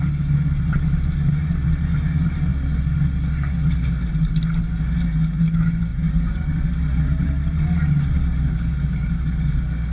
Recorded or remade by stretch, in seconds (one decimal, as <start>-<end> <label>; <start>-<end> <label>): 0.0-5.9 recorded; 5.9-6.6 remade; 6.6-9.9 recorded